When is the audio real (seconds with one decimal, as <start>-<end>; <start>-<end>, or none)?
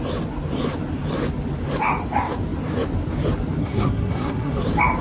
0.0-3.6; 4.6-5.0